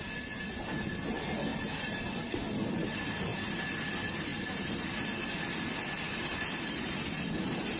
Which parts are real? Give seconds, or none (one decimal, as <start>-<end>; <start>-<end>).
0.0-7.8